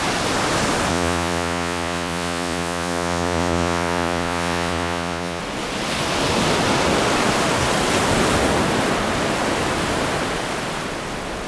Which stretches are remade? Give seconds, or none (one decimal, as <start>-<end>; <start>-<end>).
0.9-5.4

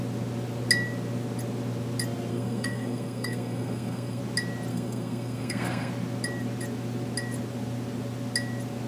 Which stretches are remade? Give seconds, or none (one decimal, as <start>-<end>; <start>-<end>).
2.3-4.2; 4.7-5.9